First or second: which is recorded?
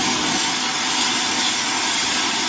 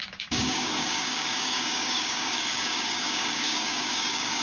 first